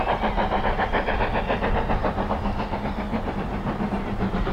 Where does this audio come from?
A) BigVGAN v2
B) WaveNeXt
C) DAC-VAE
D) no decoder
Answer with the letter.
D